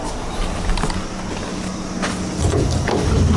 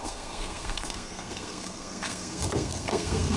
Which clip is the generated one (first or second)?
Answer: second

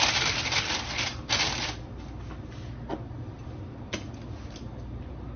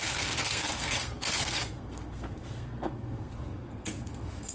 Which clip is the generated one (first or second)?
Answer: second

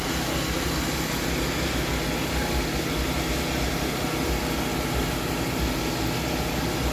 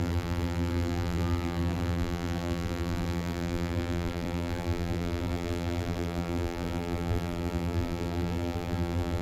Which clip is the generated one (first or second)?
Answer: second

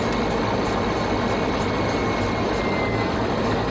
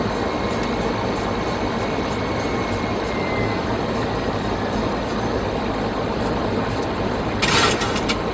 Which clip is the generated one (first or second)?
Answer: second